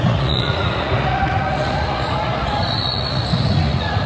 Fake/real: fake